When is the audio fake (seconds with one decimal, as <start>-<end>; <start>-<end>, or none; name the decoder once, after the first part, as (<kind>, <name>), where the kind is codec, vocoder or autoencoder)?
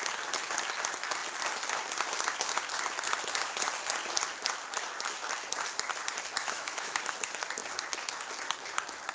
6.4-7.0 (autoencoder, DAC-VAE)